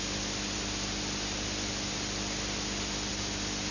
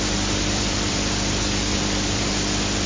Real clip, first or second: first